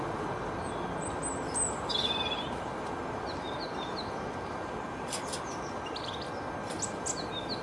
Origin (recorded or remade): recorded